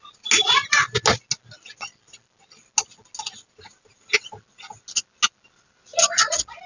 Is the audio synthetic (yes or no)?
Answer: no